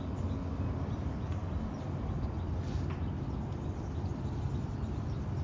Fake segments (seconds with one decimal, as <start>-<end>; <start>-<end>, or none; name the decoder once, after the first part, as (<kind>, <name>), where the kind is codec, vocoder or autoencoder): none